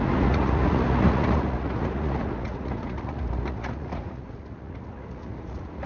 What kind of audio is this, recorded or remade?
remade